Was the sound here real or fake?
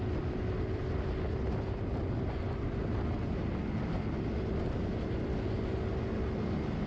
real